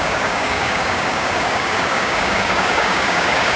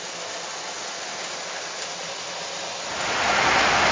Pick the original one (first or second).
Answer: second